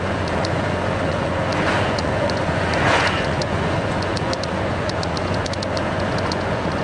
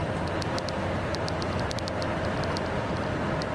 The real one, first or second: second